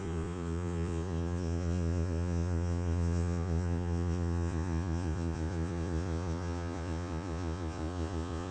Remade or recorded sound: remade